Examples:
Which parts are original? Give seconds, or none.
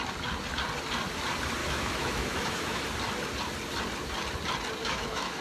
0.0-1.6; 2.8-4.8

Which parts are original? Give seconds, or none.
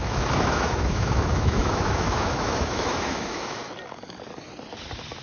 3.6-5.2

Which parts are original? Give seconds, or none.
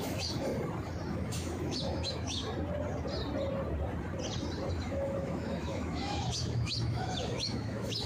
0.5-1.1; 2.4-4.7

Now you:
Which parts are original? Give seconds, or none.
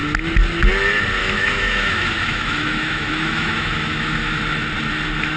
0.0-1.2; 4.4-5.4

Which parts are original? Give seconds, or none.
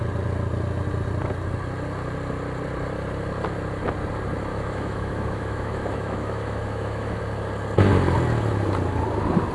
0.0-4.5; 7.2-9.5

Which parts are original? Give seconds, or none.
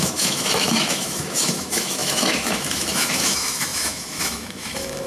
none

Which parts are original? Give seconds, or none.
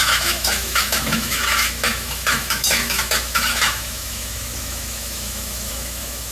none